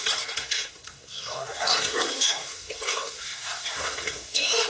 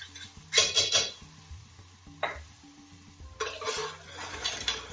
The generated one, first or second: first